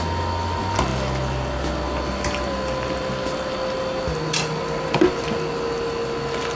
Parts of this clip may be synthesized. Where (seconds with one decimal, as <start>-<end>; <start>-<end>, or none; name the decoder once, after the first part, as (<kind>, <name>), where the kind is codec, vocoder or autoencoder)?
none

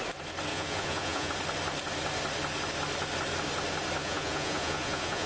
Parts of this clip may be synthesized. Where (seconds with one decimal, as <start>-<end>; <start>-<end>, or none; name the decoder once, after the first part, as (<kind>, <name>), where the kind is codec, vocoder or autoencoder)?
0.5-1.3 (vocoder, Vocos); 4.0-5.3

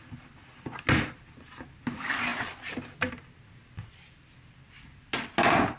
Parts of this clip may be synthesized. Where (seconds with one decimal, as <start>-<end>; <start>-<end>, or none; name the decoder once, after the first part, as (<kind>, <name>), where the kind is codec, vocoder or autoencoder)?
none

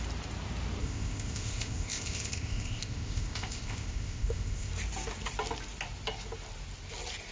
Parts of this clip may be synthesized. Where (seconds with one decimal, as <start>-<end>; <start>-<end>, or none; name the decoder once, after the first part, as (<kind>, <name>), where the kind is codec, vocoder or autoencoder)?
0.8-4.7 (codec, ZipCodec)

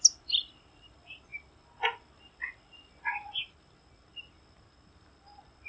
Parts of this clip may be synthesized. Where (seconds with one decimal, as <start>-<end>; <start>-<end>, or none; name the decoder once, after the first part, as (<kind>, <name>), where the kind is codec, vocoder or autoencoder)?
none

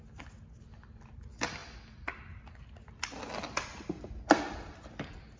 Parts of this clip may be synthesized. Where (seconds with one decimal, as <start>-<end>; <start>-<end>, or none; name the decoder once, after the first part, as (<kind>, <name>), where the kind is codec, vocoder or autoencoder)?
none